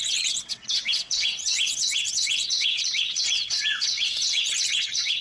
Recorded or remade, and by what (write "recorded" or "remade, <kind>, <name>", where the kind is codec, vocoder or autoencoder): remade, vocoder, WaveNeXt